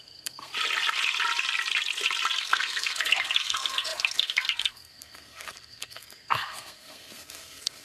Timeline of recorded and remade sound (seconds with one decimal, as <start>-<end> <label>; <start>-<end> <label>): 0.0-0.5 remade; 0.5-2.4 recorded; 2.4-7.8 remade